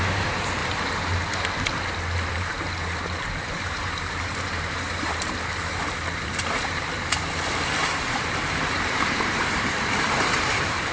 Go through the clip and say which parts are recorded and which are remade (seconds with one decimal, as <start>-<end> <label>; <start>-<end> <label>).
0.0-0.6 remade; 0.6-2.3 recorded; 2.3-10.9 remade